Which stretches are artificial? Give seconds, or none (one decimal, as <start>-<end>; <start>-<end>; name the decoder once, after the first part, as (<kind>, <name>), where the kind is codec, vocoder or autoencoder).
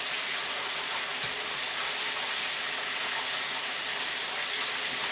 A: none